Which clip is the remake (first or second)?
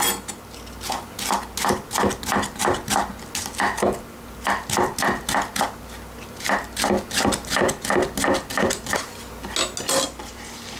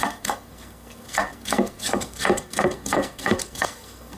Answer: second